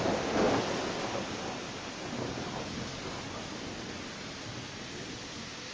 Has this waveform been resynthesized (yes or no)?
no